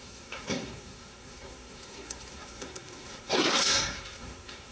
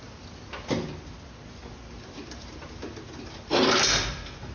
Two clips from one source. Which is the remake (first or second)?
first